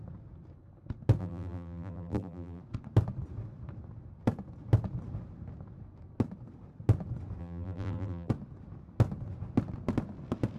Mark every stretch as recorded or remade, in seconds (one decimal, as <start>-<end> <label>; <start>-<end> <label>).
0.0-1.2 recorded; 1.2-2.6 remade; 2.6-7.4 recorded; 7.4-8.3 remade; 8.3-10.6 recorded